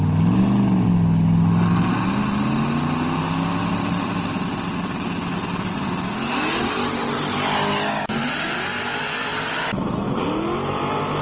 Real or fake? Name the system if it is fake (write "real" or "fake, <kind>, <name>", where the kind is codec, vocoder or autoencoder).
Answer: real